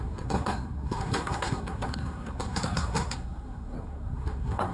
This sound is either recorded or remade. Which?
remade